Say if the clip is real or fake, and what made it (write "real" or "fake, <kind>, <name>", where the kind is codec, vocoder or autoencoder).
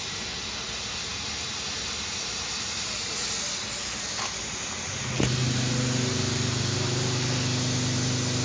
real